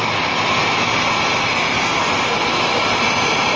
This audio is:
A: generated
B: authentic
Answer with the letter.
B